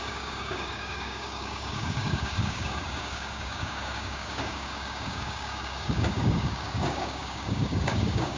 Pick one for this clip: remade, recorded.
remade